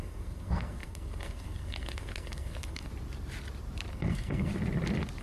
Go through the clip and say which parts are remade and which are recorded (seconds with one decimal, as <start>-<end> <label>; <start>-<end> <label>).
0.0-2.9 remade; 2.9-3.9 recorded; 3.9-4.5 remade; 4.5-5.2 recorded